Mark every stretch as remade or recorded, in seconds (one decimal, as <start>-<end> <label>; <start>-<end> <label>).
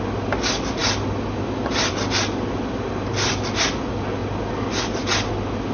0.0-5.7 recorded